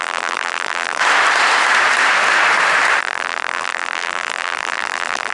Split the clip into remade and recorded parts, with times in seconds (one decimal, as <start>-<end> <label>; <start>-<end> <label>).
0.0-1.0 remade; 1.0-3.0 recorded; 3.0-5.3 remade